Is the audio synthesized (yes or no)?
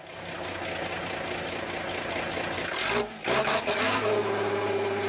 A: no